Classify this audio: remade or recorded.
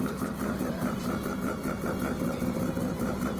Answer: remade